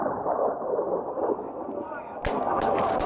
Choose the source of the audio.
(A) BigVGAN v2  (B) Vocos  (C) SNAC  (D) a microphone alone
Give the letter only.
D